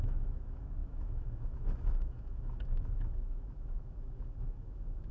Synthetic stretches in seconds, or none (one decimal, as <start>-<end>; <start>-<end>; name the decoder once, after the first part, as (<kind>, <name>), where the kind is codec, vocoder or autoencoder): 0.0-5.1 (autoencoder, DAC-VAE)